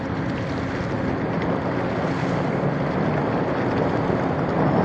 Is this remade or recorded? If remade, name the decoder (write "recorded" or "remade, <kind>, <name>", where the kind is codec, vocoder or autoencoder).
recorded